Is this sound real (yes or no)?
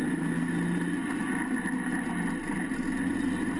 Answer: yes